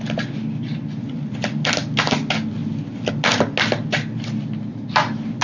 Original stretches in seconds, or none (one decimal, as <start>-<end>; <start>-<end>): 0.0-5.4